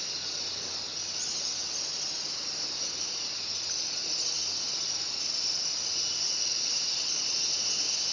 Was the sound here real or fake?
real